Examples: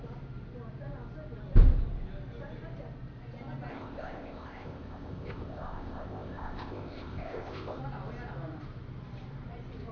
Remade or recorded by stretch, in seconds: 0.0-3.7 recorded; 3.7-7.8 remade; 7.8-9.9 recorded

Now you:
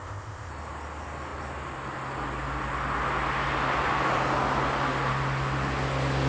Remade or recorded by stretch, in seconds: 0.0-0.5 remade; 0.5-6.3 recorded

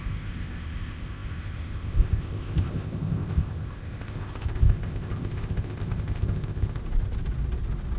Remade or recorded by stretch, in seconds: 0.0-6.8 remade; 6.8-8.0 recorded